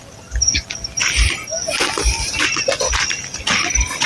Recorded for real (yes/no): yes